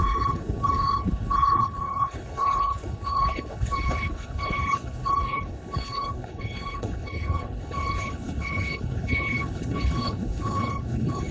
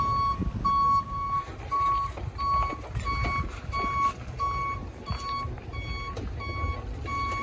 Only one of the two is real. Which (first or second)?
second